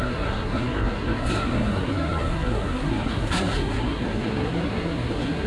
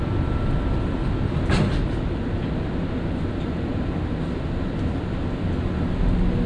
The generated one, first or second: first